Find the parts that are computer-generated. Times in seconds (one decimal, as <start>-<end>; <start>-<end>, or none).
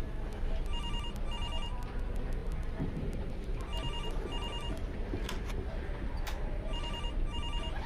none